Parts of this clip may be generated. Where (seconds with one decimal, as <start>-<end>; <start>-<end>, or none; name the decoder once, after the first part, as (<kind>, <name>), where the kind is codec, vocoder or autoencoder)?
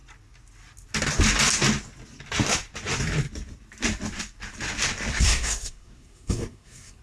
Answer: 5.1-7.0 (codec, SNAC)